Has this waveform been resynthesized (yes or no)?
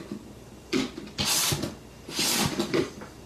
no